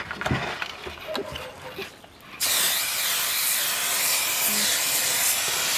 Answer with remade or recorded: recorded